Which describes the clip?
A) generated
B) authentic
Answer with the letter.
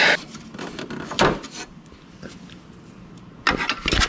B